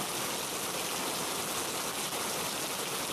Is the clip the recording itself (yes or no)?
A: yes